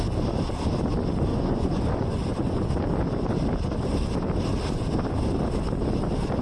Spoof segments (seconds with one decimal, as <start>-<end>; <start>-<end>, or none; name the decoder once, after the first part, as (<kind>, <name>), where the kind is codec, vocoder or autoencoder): 1.3-2.7 (vocoder, Vocos)

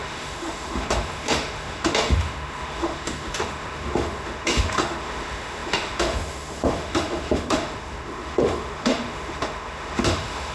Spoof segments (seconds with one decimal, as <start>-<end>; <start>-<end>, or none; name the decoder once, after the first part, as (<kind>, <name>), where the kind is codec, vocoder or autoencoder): 0.0-10.5 (autoencoder, DAC-VAE)

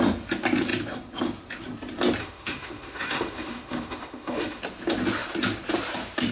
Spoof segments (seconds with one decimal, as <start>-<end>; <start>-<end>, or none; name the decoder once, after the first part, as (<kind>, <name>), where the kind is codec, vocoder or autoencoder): 2.2-4.6 (autoencoder, DAC-VAE)